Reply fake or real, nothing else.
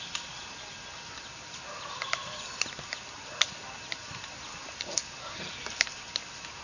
real